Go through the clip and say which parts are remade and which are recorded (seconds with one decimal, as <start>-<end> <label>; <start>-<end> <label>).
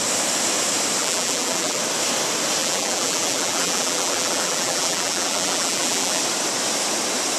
0.0-1.0 recorded; 1.0-1.8 remade; 1.8-2.6 recorded; 2.6-6.2 remade; 6.2-7.4 recorded